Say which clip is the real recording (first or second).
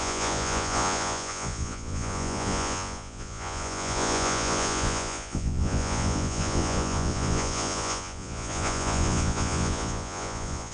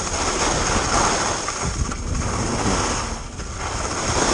second